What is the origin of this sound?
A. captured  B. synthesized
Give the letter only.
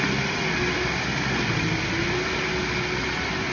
A